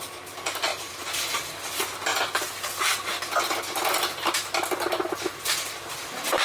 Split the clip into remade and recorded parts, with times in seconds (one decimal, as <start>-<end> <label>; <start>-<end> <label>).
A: 0.0-0.7 recorded; 0.7-1.5 remade; 1.5-6.4 recorded

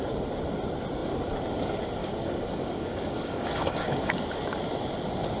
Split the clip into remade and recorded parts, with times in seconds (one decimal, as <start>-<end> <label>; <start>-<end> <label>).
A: 0.0-2.0 recorded; 2.0-4.1 remade; 4.1-5.4 recorded

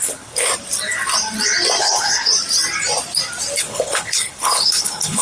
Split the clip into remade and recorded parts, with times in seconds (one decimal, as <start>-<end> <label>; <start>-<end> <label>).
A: 0.0-0.5 remade; 0.5-1.8 recorded; 1.8-2.3 remade; 2.3-3.6 recorded; 3.6-5.2 remade

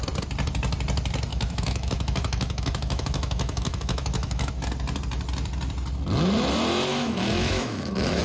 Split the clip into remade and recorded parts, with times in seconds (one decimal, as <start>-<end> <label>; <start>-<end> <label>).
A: 0.0-1.3 recorded; 1.3-4.5 remade; 4.5-6.9 recorded; 6.9-8.2 remade

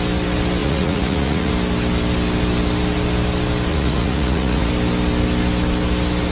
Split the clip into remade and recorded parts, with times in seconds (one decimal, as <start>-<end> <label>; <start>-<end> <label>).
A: 0.0-0.6 recorded; 0.6-1.5 remade; 1.5-3.7 recorded; 3.7-4.7 remade; 4.7-6.3 recorded